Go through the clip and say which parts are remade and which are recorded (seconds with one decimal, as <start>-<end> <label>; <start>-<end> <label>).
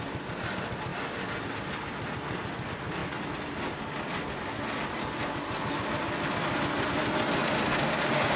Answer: 0.0-7.7 recorded; 7.7-8.4 remade